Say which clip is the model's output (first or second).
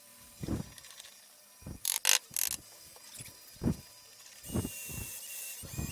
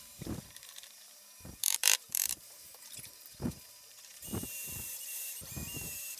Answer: second